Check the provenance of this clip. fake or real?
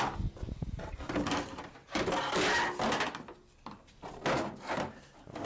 real